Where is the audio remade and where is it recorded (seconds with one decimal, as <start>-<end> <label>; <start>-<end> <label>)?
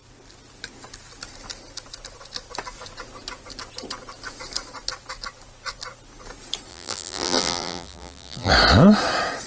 0.0-6.7 recorded; 6.7-8.5 remade; 8.5-9.5 recorded